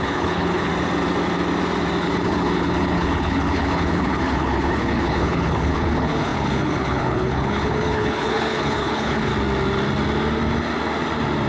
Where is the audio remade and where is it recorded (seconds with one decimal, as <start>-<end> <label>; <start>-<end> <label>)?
0.0-0.7 remade; 0.7-2.0 recorded; 2.0-9.3 remade; 9.3-11.5 recorded